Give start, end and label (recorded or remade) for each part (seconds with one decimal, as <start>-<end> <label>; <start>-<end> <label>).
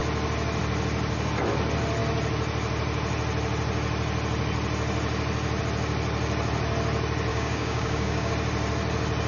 0.0-7.3 recorded; 7.3-8.3 remade; 8.3-9.3 recorded